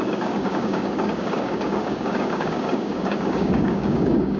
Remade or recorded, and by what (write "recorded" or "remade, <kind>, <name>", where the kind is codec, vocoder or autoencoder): remade, codec, DAC